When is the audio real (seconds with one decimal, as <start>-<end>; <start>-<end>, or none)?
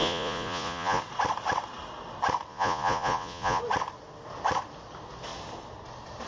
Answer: 1.0-2.5; 3.6-6.3